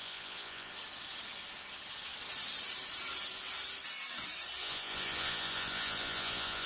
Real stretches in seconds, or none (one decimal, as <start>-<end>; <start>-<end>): 0.7-4.6